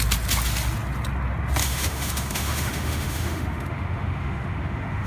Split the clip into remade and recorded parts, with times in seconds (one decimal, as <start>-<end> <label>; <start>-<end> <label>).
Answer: 0.0-1.6 recorded; 1.6-5.1 remade